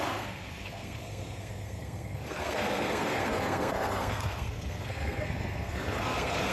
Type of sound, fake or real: fake